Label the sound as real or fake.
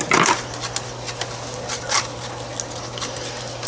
real